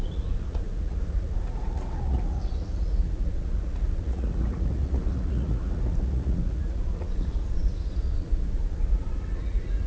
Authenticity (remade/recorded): remade